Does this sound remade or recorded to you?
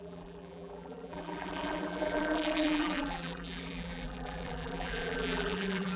remade